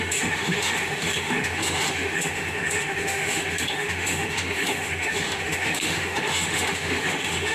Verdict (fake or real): fake